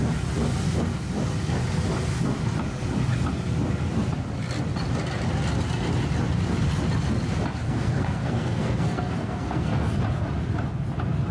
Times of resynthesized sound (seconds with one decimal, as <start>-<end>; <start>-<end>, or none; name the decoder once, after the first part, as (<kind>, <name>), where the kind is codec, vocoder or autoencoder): 7.6-10.0 (codec, SNAC)